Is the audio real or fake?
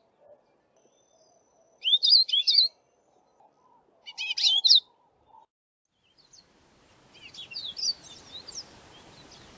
real